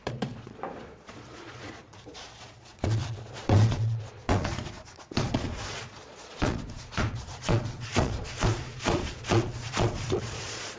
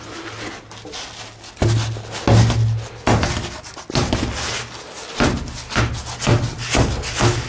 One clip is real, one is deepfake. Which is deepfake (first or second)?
first